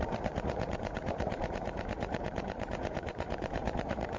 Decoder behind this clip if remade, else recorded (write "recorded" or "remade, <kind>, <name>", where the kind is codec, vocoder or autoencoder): remade, vocoder, Vocos